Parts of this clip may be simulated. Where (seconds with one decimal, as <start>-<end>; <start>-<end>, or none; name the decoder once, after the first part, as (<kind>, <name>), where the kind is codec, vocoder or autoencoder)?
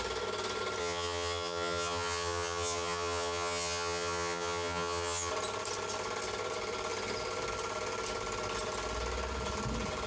0.8-5.3 (vocoder, HiFi-GAN)